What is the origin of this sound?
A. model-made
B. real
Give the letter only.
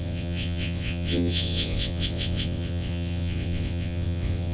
A